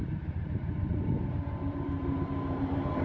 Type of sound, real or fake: fake